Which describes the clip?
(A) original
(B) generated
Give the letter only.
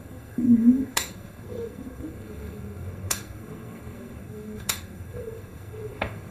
B